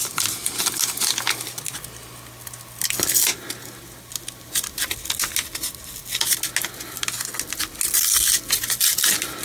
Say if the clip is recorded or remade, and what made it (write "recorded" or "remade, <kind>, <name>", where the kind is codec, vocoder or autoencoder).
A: recorded